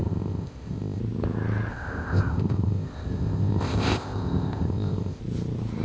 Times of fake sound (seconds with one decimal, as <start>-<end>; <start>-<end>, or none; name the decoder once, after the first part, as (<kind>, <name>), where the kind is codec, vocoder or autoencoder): 0.0-1.0 (codec, ZipCodec); 1.7-5.2